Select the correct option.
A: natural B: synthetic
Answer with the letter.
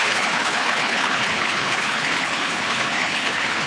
B